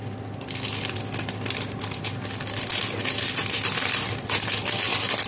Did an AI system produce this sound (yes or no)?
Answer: no